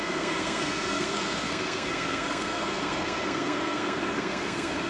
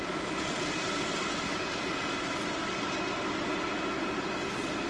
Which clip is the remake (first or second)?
first